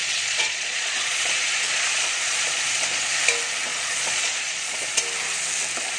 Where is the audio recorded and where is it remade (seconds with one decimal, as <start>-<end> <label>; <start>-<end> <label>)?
0.0-3.2 remade; 3.2-3.7 recorded; 3.7-4.9 remade; 4.9-6.0 recorded